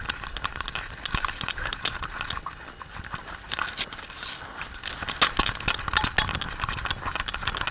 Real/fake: real